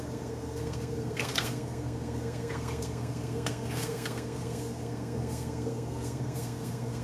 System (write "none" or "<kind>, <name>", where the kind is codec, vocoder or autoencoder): codec, SNAC